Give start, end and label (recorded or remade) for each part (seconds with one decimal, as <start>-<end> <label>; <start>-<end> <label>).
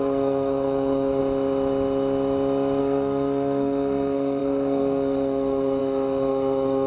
0.0-1.2 remade; 1.2-2.8 recorded; 2.8-6.9 remade